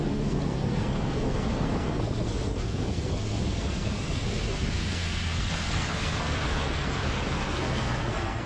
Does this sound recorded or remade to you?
remade